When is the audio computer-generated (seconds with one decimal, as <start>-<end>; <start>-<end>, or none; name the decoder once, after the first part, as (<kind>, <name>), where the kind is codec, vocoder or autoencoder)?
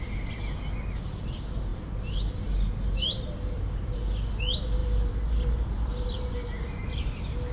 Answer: none